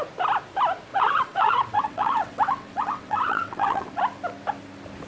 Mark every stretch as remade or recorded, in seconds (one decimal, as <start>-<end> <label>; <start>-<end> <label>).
0.0-0.9 recorded; 0.9-4.0 remade; 4.0-5.1 recorded